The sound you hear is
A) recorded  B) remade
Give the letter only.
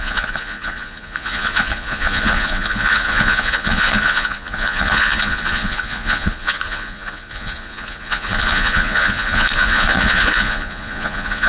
B